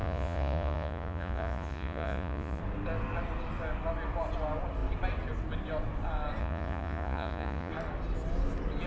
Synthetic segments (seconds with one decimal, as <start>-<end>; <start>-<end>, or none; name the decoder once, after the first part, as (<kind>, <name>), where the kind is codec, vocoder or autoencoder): 0.0-2.6 (vocoder, Vocos); 6.4-7.7